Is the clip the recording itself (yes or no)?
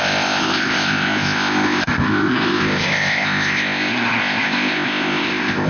no